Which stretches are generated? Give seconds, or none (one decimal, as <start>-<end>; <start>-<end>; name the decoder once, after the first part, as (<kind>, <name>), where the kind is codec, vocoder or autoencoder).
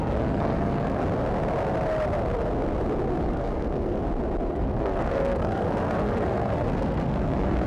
0.0-1.0 (codec, SNAC); 3.3-4.0; 4.5-7.7